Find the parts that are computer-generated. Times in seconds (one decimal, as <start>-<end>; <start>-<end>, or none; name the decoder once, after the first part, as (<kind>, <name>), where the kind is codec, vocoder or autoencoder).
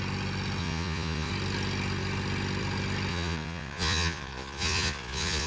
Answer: 0.6-1.3 (vocoder, Vocos); 3.1-5.5